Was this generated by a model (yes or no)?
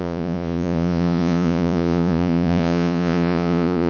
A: yes